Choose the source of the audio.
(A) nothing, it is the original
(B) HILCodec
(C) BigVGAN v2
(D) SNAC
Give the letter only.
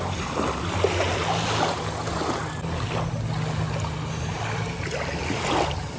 A